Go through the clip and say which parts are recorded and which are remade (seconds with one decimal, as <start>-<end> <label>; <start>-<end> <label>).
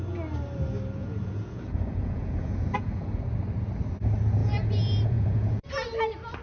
0.0-1.0 recorded; 1.0-3.2 remade; 3.2-4.4 recorded; 4.4-5.7 remade; 5.7-6.4 recorded